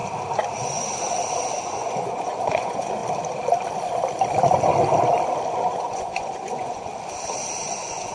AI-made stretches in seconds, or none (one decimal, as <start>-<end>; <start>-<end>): 1.6-3.0; 5.7-6.9; 7.6-8.1